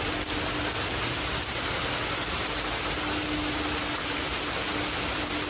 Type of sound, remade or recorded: recorded